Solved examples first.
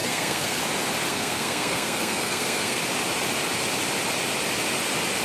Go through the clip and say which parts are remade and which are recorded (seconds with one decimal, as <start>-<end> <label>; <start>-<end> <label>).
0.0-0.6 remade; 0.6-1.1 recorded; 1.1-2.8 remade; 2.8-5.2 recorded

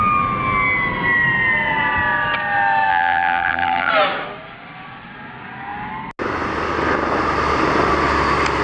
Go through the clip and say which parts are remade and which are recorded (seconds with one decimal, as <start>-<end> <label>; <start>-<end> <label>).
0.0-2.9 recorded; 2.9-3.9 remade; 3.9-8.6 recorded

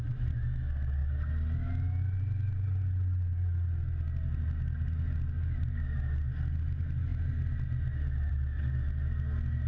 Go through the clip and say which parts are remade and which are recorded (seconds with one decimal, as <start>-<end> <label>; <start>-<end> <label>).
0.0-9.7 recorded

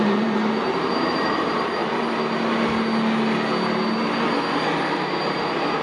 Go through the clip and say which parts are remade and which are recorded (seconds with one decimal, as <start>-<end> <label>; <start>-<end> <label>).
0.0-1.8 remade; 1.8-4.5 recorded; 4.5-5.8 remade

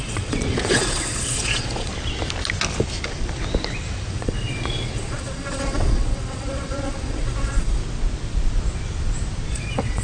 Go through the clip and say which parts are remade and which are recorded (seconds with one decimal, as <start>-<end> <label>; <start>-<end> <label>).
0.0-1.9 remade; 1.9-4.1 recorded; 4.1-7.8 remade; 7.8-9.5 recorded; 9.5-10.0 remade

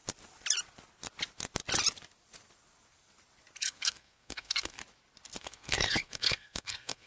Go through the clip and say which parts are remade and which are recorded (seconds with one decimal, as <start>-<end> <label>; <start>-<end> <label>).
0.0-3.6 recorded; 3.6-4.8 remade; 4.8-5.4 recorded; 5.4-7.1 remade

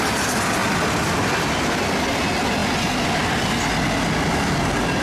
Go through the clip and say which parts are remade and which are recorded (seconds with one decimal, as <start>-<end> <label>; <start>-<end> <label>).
0.0-5.0 recorded